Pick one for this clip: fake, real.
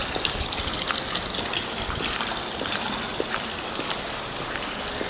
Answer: real